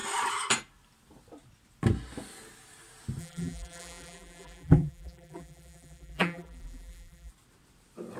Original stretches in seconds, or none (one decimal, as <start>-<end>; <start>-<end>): 0.0-3.2; 7.3-8.2